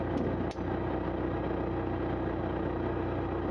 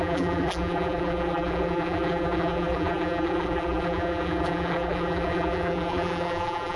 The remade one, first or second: second